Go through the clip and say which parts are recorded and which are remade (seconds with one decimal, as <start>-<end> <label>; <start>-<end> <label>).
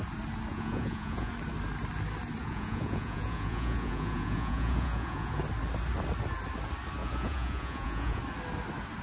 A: 0.0-0.5 recorded; 0.5-1.3 remade; 1.3-2.4 recorded; 2.4-5.4 remade; 5.4-7.0 recorded; 7.0-8.2 remade; 8.2-9.0 recorded